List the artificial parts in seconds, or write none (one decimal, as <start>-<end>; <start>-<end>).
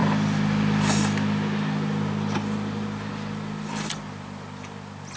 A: none